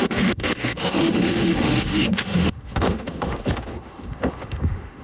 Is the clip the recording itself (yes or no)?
no